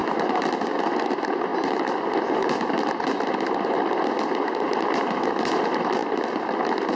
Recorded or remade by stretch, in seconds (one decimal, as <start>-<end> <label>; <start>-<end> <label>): 0.0-1.0 remade; 1.0-6.0 recorded; 6.0-6.6 remade; 6.6-7.0 recorded